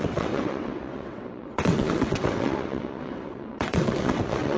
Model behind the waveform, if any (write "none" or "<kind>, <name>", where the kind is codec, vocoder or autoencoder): vocoder, WaveNeXt